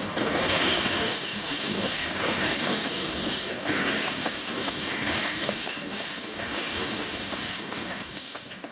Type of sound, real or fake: fake